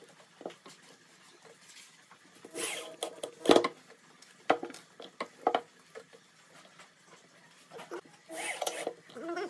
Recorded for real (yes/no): yes